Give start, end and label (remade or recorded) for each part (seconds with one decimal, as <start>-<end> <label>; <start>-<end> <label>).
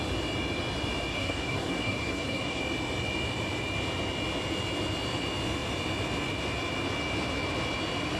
0.0-1.1 recorded; 1.1-2.6 remade; 2.6-8.2 recorded